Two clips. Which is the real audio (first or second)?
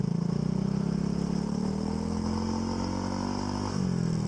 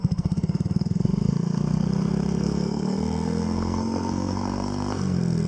first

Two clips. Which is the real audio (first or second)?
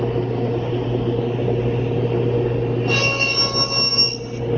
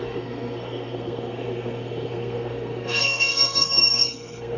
first